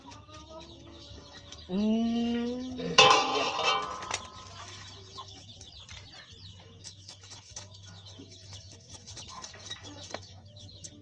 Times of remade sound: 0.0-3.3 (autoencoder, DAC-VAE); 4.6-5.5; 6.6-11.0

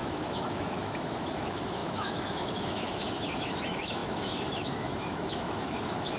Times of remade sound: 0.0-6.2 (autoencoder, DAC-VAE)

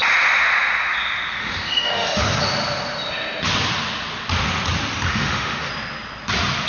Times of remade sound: 1.4-2.2 (autoencoder, DAC-VAE); 5.1-5.7

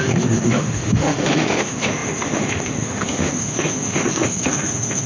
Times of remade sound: 0.0-5.1 (autoencoder, DAC-VAE)